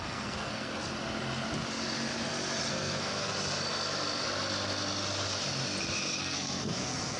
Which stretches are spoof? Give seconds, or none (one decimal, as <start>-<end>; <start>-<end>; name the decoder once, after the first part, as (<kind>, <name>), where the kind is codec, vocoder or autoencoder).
0.0-0.7 (codec, SNAC); 2.7-3.3; 6.2-7.2